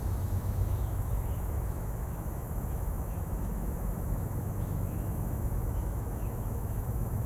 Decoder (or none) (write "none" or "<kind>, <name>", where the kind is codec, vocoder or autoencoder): autoencoder, DAC-VAE